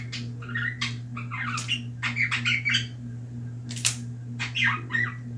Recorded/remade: recorded